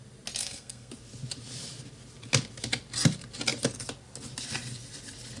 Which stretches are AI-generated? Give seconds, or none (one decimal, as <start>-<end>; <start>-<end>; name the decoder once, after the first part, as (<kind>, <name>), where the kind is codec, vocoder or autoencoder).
0.4-0.9 (codec, SNAC)